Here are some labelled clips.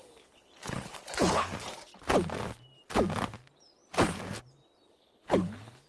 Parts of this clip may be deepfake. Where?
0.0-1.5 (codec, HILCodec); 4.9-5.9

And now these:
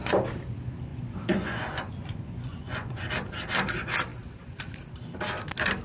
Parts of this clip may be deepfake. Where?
0.9-3.1 (vocoder, Vocos)

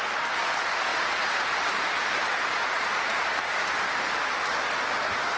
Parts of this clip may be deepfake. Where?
0.9-4.1 (vocoder, BigVGAN v2)

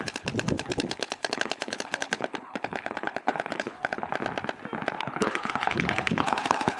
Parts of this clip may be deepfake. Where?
0.0-4.1 (codec, HILCodec); 5.0-6.8

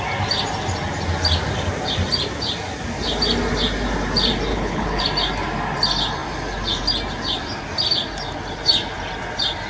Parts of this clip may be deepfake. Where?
4.5-5.0 (codec, HILCodec)

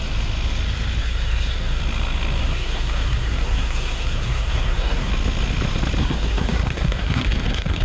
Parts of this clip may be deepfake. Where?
1.0-1.8 (codec, SNAC); 2.4-5.1; 6.0-7.8

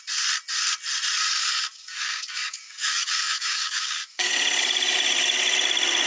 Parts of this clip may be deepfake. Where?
1.4-4.3 (codec, DAC)

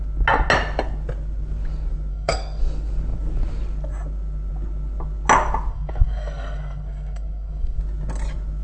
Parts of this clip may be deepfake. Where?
2.1-2.6 (codec, SNAC); 5.7-7.8